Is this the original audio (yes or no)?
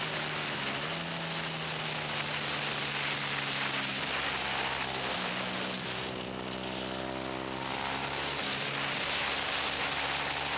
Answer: yes